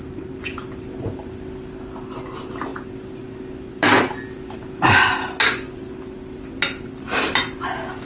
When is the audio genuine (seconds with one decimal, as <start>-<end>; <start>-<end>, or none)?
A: 0.0-8.1